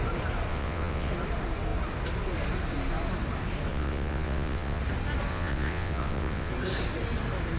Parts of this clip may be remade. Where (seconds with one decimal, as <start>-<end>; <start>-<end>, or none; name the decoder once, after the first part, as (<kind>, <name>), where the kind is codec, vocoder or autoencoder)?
0.5-1.1 (vocoder, WaveNeXt); 3.7-4.8; 5.3-6.5